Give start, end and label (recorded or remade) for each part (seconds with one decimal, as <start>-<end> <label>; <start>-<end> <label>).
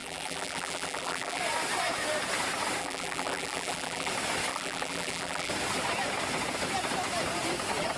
0.0-1.4 remade; 1.4-2.8 recorded; 2.8-4.1 remade; 4.1-4.5 recorded; 4.5-5.5 remade; 5.5-8.0 recorded